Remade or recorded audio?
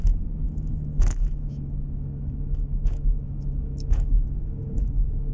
remade